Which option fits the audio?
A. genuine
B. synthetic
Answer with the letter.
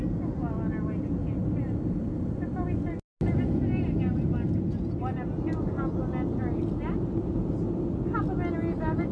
A